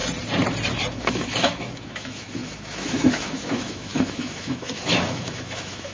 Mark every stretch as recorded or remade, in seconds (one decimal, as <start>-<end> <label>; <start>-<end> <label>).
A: 0.0-0.9 recorded; 0.9-5.9 remade